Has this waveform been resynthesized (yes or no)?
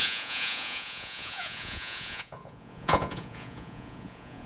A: yes